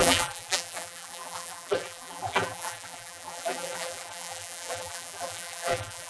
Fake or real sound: fake